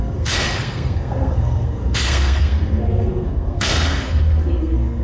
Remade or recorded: remade